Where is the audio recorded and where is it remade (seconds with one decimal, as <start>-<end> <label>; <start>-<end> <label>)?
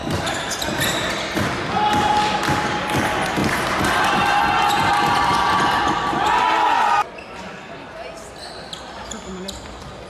0.0-10.1 recorded